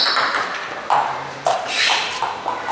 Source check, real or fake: real